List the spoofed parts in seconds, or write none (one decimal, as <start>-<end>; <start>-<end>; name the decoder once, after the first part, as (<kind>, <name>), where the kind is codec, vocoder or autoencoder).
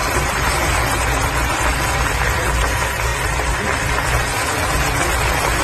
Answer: 0.0-0.8 (vocoder, BigVGAN v2)